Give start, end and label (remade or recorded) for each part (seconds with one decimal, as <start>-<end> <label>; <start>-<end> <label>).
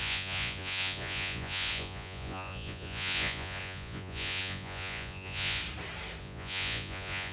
0.0-5.6 remade; 5.6-6.2 recorded; 6.2-7.3 remade